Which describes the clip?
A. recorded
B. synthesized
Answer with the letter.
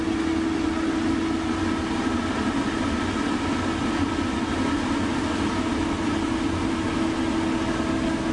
A